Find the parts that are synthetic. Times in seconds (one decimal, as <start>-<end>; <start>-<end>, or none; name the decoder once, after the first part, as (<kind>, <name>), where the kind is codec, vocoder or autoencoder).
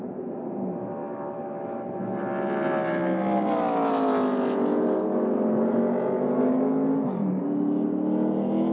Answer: none